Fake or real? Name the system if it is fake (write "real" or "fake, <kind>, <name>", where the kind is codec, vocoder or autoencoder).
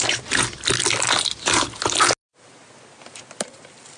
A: real